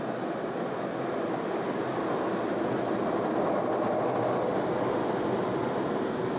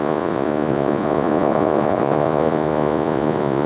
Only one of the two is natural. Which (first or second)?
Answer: first